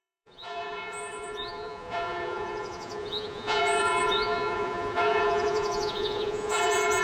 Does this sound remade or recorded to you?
remade